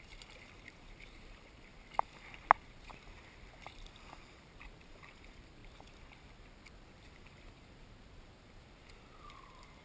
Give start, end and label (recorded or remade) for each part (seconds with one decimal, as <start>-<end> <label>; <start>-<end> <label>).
0.0-1.7 remade; 1.7-4.2 recorded; 4.2-5.6 remade; 5.6-6.9 recorded; 6.9-9.8 remade